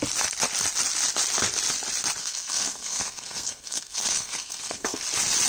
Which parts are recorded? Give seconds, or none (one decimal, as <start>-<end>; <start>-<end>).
0.0-2.2; 5.0-5.5